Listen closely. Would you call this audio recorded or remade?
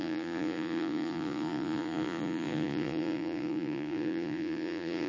remade